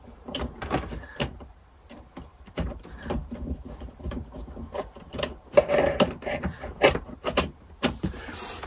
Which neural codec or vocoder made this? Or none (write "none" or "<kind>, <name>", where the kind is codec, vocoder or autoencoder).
vocoder, BigVGAN v2